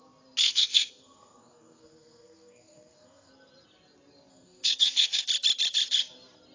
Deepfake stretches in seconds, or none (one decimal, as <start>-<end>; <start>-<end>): 0.4-3.3; 4.3-5.2